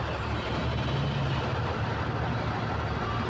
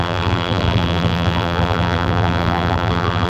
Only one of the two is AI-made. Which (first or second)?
second